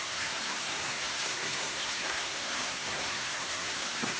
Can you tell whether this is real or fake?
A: fake